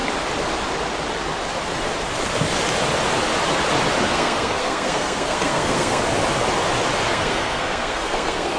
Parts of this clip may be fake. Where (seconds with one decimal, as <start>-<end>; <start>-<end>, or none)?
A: 4.1-6.0; 7.1-8.6